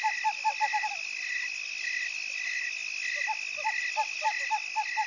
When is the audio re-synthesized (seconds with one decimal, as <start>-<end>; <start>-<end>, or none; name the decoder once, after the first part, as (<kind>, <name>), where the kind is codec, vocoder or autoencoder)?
none